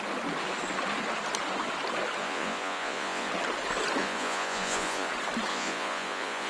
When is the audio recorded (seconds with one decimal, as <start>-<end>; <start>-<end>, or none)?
0.0-2.2; 3.3-4.0; 5.1-5.5